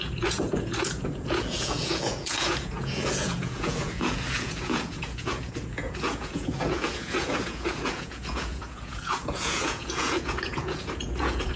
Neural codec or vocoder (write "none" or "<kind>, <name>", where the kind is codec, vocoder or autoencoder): vocoder, Vocos